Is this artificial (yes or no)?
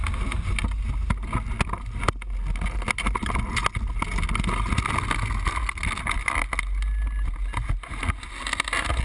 no